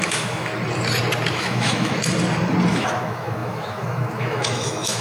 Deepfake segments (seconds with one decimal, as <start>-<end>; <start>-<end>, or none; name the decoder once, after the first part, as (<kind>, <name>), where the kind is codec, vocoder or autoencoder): 0.0-0.5 (autoencoder, DAC-VAE); 1.3-2.0; 2.7-5.0